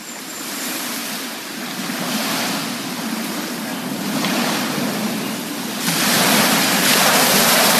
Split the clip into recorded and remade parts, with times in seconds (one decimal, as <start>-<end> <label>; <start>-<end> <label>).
0.0-1.0 remade; 1.0-2.9 recorded; 2.9-3.7 remade; 3.7-6.4 recorded; 6.4-7.8 remade